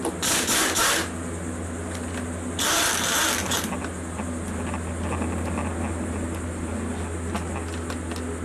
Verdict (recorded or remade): recorded